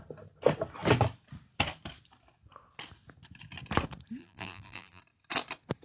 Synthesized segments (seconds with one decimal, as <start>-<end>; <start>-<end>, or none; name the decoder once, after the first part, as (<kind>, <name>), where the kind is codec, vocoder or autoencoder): 4.2-5.0 (vocoder, BigVGAN v2)